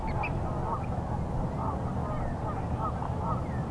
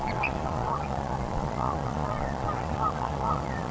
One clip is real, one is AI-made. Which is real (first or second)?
first